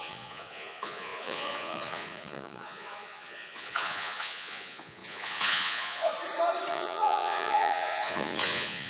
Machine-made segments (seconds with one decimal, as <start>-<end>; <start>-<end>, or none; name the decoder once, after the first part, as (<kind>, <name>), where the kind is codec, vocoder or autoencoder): 0.0-6.1 (vocoder, Vocos); 6.7-8.9